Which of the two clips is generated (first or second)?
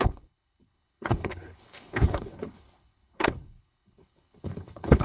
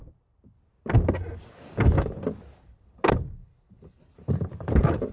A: first